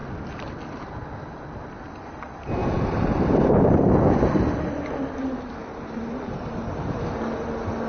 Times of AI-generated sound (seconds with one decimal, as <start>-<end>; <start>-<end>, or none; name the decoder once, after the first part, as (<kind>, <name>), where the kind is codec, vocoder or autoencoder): 2.6-3.6 (vocoder, BigVGAN v2); 5.6-7.1